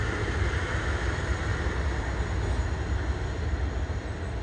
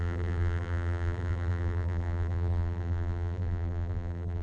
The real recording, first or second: first